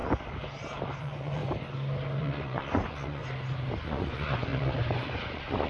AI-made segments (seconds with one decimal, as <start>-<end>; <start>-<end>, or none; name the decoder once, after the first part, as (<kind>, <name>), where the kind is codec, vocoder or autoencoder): 1.0-1.4 (vocoder, Vocos); 2.2-3.2; 3.8-5.7